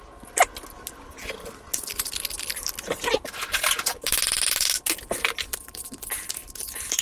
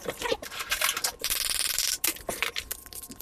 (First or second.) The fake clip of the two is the second